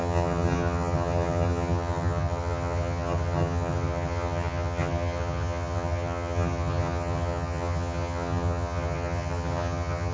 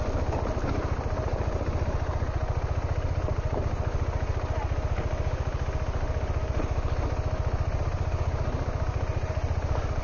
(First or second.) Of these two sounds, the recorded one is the second